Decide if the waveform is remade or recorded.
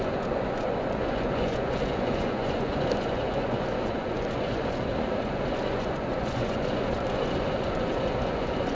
remade